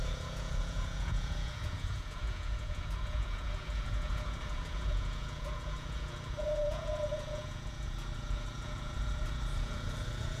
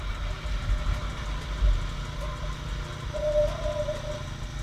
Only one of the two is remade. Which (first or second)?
first